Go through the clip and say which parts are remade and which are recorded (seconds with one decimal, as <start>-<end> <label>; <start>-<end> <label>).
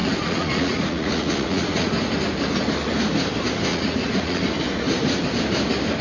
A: 0.0-1.9 remade; 1.9-3.7 recorded; 3.7-4.4 remade; 4.4-6.0 recorded